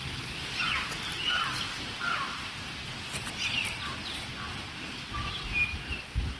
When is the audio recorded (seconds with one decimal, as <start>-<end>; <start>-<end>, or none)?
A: 3.8-6.4